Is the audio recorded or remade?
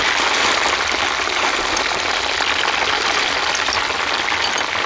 recorded